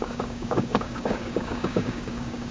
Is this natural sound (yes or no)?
no